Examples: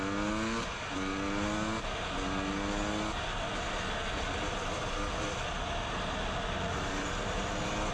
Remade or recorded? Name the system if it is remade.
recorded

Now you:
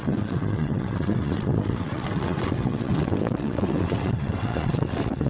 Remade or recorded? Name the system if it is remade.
remade, vocoder, WaveNeXt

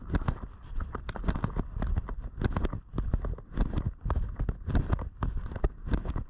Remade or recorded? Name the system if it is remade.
recorded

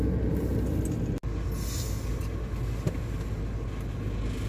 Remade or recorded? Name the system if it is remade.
recorded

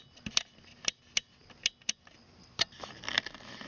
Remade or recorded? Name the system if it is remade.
recorded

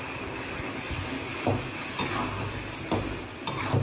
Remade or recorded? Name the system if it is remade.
recorded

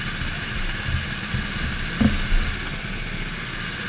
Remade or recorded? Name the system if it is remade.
recorded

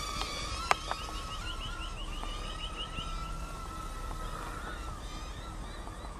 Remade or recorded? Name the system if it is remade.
recorded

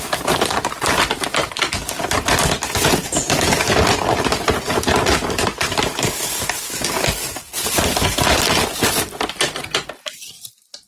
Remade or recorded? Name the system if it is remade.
recorded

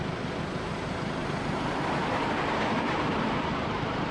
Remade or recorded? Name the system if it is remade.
remade, vocoder, BigVGAN v2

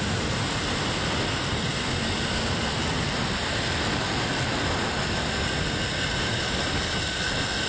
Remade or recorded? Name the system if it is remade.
recorded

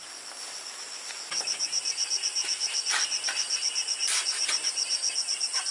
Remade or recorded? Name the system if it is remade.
recorded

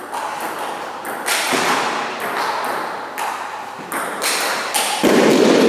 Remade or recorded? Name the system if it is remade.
recorded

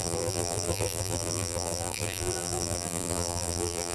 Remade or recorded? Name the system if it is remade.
remade, vocoder, BigVGAN v2